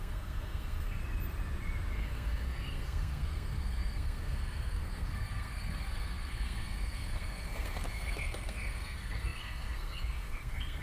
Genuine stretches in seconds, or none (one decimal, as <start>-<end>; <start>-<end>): 1.0-1.9